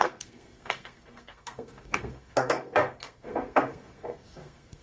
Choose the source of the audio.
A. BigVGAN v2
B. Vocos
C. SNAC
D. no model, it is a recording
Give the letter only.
C